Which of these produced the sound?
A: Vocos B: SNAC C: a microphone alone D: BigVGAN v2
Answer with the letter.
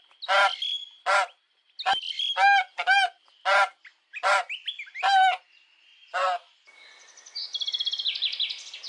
C